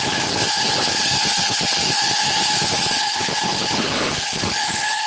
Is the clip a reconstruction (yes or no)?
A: yes